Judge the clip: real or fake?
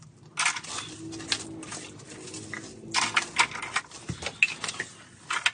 real